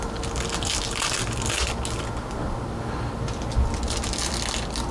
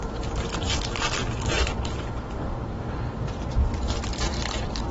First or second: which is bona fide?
first